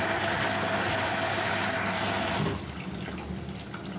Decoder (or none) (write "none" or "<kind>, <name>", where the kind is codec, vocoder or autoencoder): none